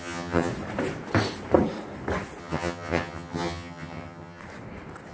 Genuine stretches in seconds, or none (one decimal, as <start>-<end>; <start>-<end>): 0.5-2.4; 4.4-5.1